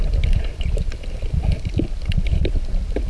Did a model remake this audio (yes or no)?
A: no